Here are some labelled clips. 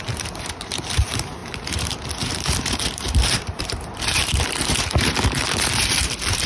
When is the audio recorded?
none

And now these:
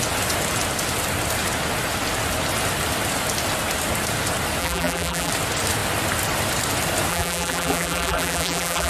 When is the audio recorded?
0.0-4.6; 5.3-7.1